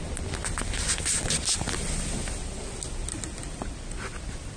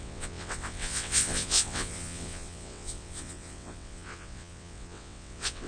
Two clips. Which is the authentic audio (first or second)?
first